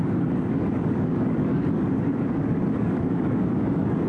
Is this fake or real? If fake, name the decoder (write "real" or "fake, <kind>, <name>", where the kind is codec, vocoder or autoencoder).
fake, codec, DAC